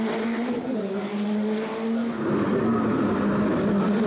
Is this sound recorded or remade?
recorded